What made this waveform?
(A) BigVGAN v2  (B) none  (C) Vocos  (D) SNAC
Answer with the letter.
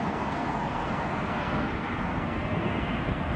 D